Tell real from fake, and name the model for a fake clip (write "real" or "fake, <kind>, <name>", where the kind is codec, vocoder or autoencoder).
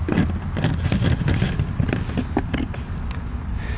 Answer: real